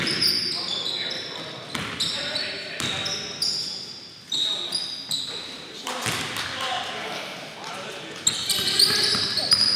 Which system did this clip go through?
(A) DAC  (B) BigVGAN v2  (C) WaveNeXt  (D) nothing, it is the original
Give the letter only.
D